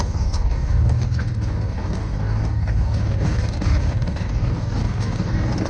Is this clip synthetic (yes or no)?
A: yes